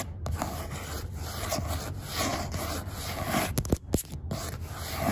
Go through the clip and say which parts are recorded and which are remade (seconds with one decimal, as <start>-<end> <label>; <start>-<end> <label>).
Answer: 0.0-5.1 recorded